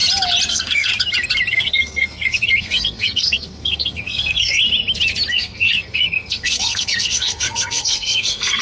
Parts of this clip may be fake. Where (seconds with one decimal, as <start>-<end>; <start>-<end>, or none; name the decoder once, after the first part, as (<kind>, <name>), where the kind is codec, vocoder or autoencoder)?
0.5-0.9 (codec, SNAC); 1.5-4.6; 5.3-8.6